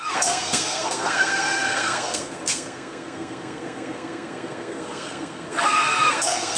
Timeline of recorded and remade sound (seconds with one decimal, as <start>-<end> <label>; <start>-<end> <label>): 0.0-6.6 remade